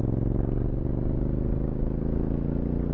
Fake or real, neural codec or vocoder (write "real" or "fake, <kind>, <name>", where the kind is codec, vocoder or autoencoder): real